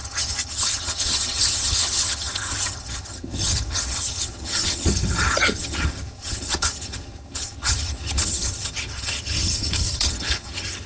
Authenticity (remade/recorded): remade